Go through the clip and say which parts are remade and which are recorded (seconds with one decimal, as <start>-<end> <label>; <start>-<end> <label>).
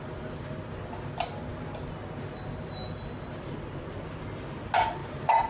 0.0-5.0 recorded; 5.0-5.5 remade